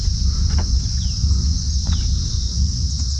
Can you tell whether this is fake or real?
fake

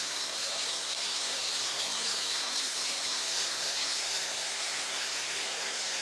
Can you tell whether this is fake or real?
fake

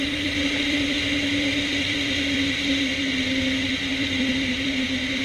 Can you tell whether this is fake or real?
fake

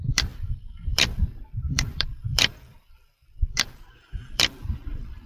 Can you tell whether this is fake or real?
fake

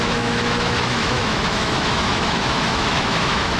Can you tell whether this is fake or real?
fake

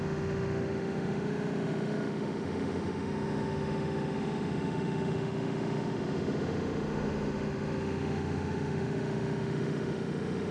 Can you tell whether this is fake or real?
fake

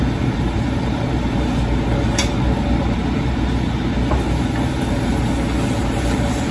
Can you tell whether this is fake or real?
fake